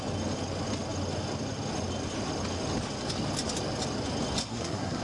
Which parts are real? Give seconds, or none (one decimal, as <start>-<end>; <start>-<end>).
0.0-4.4